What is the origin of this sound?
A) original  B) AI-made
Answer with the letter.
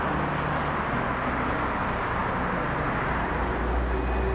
A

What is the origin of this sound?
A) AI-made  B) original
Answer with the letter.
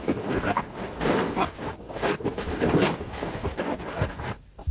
A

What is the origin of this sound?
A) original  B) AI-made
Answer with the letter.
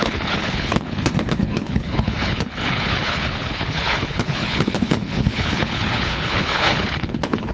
B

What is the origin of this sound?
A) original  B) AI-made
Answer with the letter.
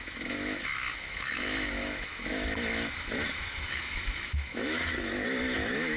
B